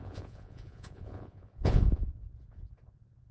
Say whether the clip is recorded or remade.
remade